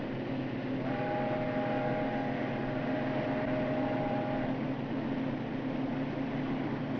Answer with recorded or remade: recorded